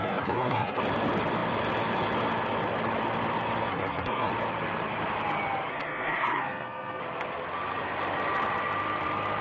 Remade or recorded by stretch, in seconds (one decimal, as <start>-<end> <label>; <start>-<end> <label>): 0.0-0.8 remade; 0.8-3.7 recorded; 3.7-4.3 remade; 4.3-5.7 recorded; 5.7-7.0 remade; 7.0-9.4 recorded